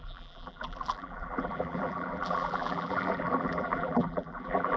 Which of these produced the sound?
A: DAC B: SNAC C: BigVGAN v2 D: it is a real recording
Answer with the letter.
C